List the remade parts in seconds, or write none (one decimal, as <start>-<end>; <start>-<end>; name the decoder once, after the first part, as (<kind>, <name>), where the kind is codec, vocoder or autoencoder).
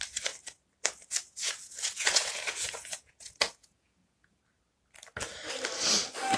1.4-4.4 (vocoder, Vocos)